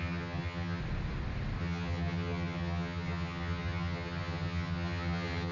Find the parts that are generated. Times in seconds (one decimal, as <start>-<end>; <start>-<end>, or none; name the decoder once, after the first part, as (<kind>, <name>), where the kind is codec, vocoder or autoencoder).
0.0-0.8 (vocoder, HiFi-GAN); 1.6-5.5